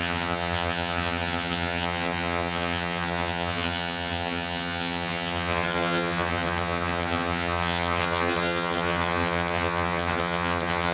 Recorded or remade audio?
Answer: remade